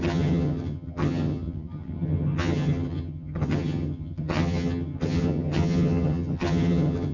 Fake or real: fake